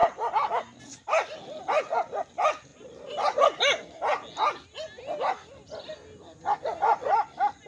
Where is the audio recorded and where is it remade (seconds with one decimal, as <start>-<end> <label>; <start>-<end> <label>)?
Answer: 0.0-7.7 recorded